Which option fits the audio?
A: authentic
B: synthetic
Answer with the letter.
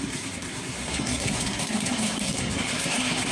B